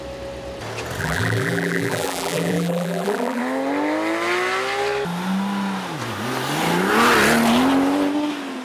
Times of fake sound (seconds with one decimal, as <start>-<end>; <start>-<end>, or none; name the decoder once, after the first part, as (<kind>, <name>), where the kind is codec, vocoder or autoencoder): 1.0-3.4 (vocoder, BigVGAN v2)